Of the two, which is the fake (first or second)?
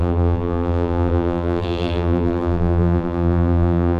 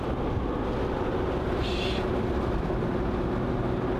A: first